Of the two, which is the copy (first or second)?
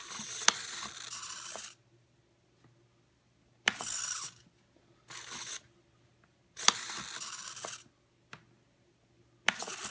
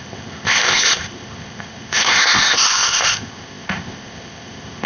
second